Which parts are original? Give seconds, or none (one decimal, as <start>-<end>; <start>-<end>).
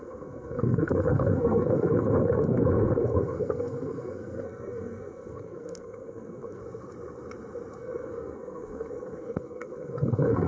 6.6-7.8